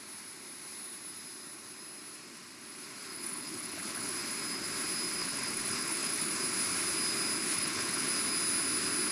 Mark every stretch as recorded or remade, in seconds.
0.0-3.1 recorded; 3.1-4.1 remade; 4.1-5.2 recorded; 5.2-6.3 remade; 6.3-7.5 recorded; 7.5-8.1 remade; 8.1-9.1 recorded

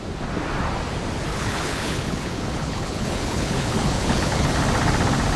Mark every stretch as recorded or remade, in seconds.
0.0-1.3 recorded; 1.3-4.5 remade; 4.5-5.4 recorded

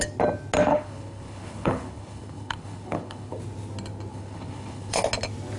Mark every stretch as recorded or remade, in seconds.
0.0-0.7 recorded; 0.7-3.4 remade; 3.4-4.1 recorded; 4.1-5.0 remade; 5.0-5.6 recorded

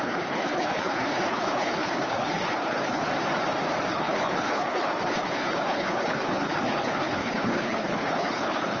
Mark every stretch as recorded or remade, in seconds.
0.0-3.1 remade; 3.1-3.9 recorded; 3.9-8.8 remade

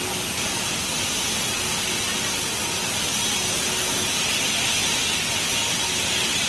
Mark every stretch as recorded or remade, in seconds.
0.0-6.5 recorded

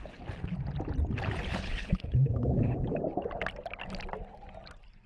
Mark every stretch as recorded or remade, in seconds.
0.0-1.5 recorded; 1.5-2.8 remade; 2.8-5.1 recorded

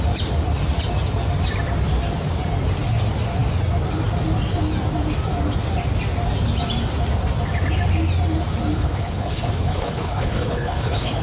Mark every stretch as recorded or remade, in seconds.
0.0-8.7 recorded; 8.7-11.2 remade

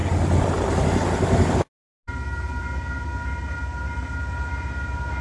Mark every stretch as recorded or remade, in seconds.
0.0-5.2 recorded